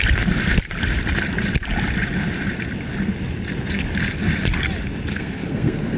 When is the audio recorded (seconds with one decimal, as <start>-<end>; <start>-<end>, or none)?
0.0-5.1